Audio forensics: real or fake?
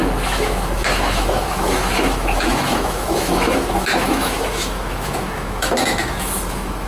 fake